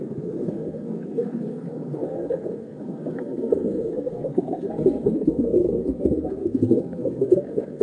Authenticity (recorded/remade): remade